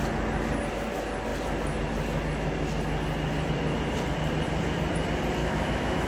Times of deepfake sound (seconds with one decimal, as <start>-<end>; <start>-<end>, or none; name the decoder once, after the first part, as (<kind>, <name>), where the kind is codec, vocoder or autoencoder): 5.4-6.1 (autoencoder, DAC-VAE)